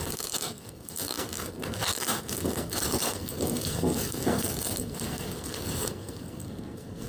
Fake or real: fake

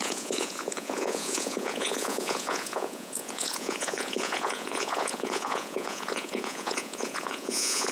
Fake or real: fake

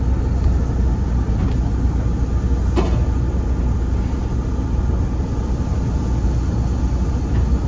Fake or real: real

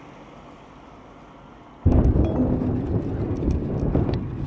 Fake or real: real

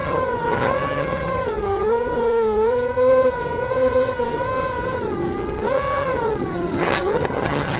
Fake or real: fake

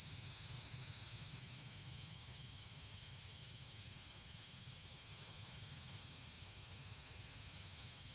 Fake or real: fake